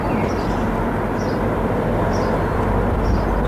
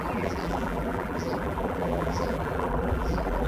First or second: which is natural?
first